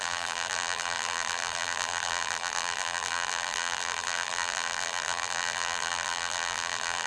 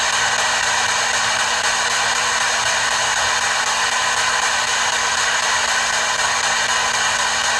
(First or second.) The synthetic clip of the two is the first